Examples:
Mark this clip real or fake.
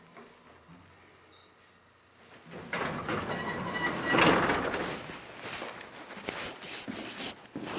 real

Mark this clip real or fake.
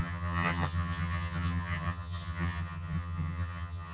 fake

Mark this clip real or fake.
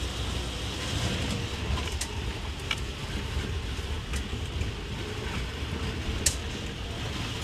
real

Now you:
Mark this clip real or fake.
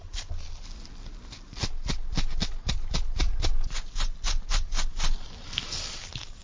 real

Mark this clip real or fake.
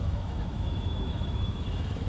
fake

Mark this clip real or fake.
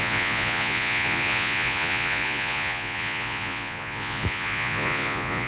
fake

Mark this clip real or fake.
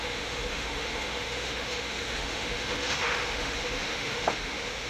fake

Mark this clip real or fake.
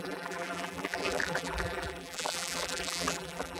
fake